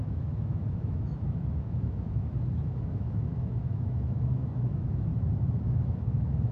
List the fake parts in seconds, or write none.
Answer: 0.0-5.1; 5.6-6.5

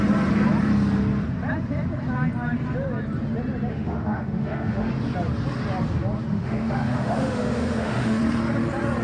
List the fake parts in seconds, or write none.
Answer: 3.7-4.9; 6.3-8.2

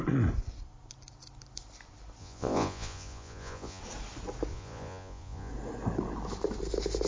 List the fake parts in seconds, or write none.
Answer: 2.2-3.8; 4.5-5.5

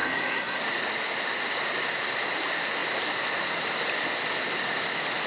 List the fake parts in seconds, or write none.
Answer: 0.0-0.6

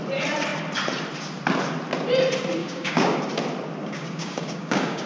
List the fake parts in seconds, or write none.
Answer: 2.6-3.2; 3.8-5.1

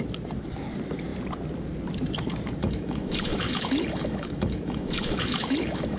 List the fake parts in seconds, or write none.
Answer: 2.6-6.0